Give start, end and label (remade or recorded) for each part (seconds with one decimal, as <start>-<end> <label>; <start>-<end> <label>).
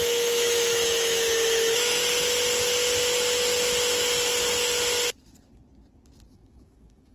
0.0-2.0 remade; 2.0-6.3 recorded; 6.3-7.1 remade